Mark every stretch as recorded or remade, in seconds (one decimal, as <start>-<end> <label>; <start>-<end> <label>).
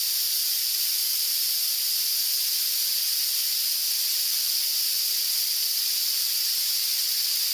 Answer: 0.0-7.5 recorded